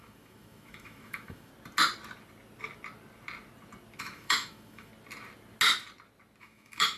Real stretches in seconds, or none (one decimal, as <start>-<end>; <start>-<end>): 1.5-4.0; 4.9-6.4